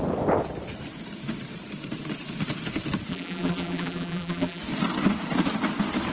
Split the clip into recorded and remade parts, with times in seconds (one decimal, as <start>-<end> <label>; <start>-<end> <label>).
0.0-3.1 recorded; 3.1-4.6 remade; 4.6-6.1 recorded